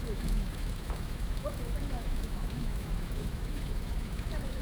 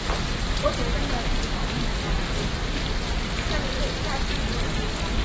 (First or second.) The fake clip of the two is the first